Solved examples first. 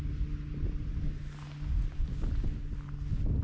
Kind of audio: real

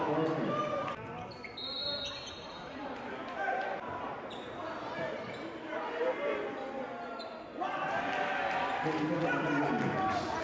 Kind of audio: real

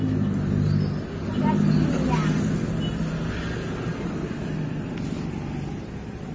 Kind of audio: real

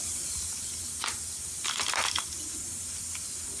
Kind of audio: real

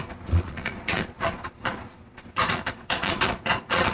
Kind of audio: fake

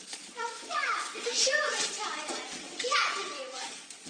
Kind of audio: fake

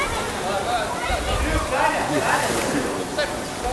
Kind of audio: real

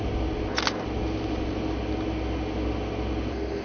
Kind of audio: real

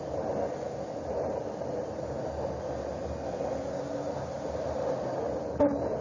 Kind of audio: real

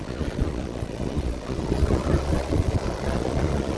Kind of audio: fake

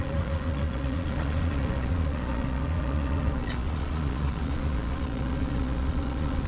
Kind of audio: fake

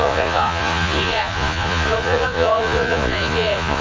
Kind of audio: fake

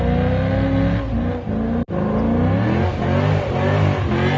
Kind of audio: real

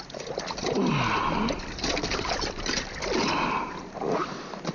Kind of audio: real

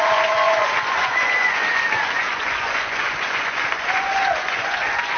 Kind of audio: fake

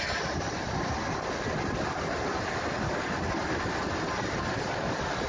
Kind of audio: real